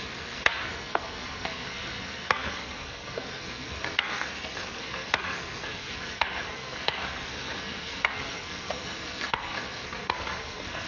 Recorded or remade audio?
remade